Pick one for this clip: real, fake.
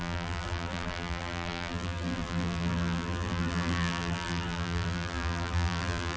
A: fake